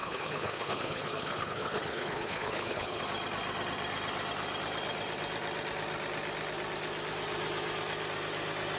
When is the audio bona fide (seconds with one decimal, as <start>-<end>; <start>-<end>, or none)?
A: 3.0-8.8